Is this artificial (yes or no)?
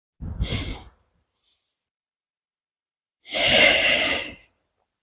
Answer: yes